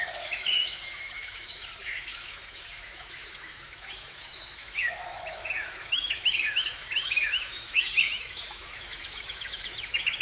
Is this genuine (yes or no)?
no